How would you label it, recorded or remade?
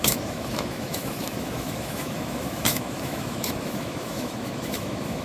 remade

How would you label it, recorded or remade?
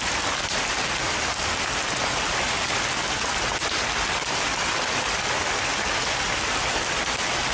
recorded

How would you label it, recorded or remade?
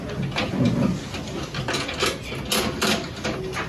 recorded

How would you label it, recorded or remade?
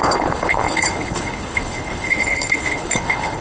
remade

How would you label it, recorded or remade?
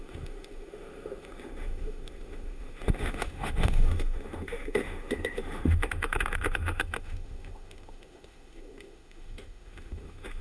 remade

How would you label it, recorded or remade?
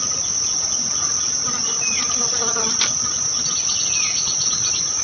recorded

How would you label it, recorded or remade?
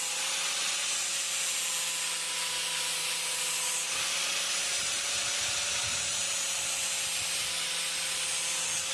recorded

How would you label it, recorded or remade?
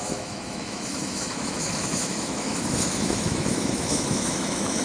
remade